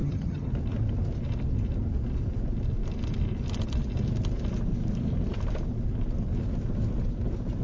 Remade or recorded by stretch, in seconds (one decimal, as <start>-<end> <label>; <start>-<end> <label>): 0.0-0.5 remade; 0.5-7.6 recorded